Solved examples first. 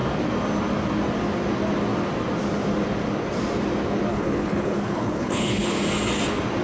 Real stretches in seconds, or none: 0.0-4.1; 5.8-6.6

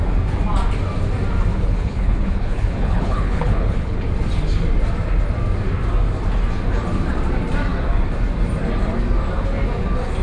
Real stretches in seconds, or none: 0.0-1.5; 4.0-10.2

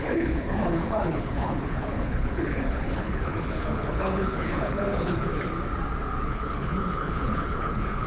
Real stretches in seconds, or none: 5.3-6.2

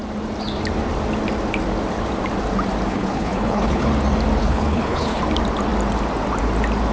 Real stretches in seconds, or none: 0.0-2.9; 3.9-4.4; 5.2-6.9

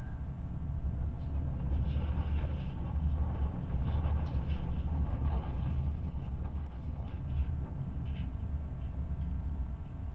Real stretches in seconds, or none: 0.0-5.1; 7.2-10.1

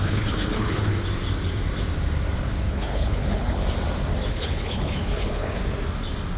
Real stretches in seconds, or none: 0.9-2.7; 3.6-4.3; 5.6-6.4

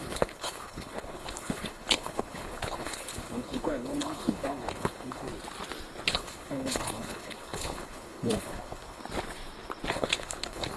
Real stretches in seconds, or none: 5.3-6.1; 9.0-9.9

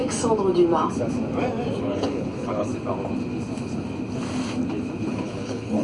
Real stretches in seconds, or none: 0.0-1.8; 2.7-5.1